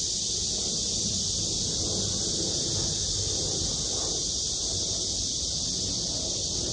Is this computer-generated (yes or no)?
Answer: no